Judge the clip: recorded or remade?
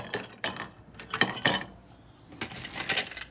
recorded